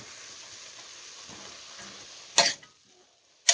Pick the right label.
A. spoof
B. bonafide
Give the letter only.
B